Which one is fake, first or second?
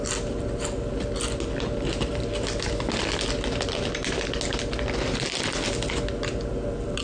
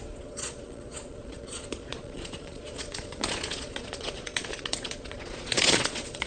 second